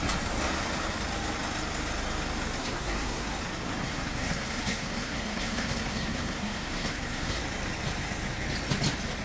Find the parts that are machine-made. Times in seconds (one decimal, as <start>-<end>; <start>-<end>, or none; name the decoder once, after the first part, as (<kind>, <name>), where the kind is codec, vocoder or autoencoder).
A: 2.6-3.4 (codec, SNAC); 3.8-7.4